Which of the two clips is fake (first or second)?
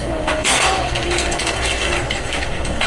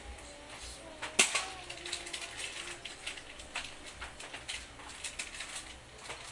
first